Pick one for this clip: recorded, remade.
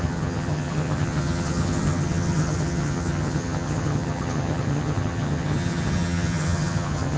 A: remade